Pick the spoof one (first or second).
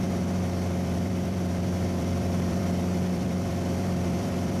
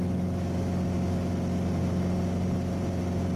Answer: first